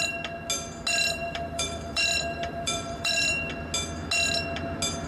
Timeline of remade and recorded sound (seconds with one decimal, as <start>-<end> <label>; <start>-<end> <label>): 0.0-1.2 recorded; 1.2-3.5 remade; 3.5-5.1 recorded